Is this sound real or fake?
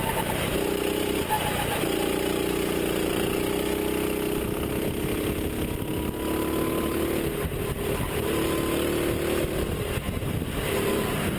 real